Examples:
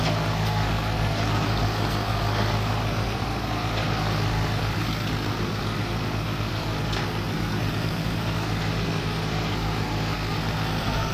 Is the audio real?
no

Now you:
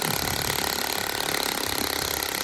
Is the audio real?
yes